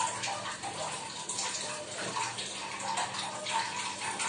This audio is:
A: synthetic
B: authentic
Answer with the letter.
B